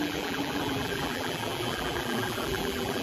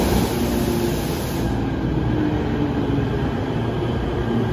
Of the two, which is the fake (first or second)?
first